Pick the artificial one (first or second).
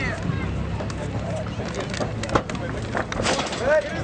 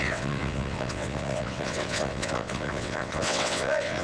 second